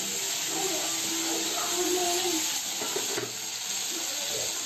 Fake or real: real